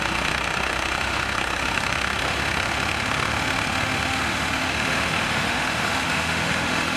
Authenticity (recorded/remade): remade